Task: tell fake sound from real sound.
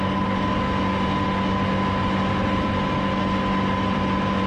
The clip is real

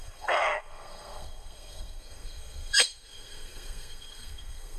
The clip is fake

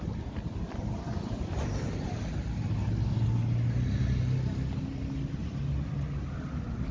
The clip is real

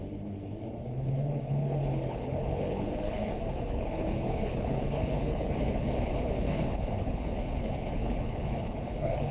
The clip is fake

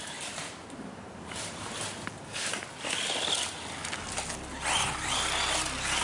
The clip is real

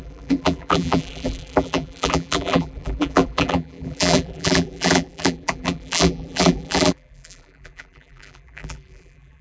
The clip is fake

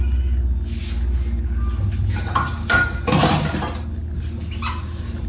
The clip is real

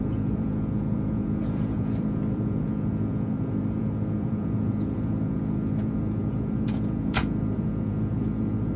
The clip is fake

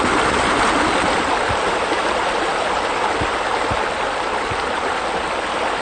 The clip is real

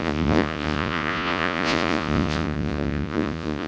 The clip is fake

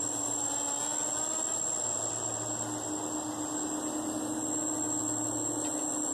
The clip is real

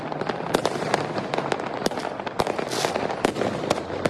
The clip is real